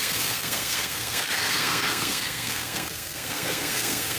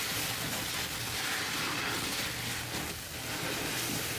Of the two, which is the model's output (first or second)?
first